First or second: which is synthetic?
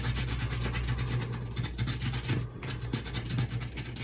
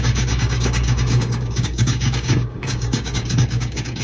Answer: second